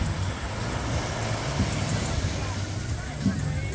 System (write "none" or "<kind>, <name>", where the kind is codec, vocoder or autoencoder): none